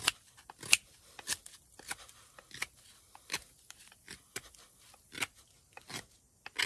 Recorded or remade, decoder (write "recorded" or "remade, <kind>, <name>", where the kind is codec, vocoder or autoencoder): recorded